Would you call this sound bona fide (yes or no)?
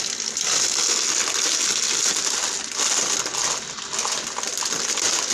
yes